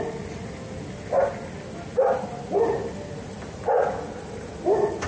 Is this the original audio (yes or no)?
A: yes